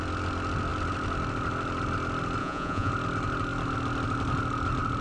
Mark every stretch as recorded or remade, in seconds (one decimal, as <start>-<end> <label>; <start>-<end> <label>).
0.0-2.4 recorded; 2.4-2.9 remade; 2.9-5.0 recorded